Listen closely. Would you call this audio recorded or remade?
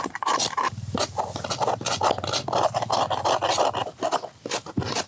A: recorded